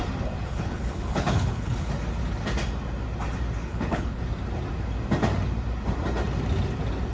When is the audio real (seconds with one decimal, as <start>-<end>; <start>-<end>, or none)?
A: 0.0-0.5; 1.9-3.6; 4.2-7.1